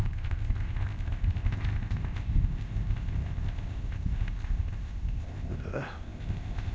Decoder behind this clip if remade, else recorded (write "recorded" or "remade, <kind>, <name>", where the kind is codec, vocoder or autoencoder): remade, codec, ZipCodec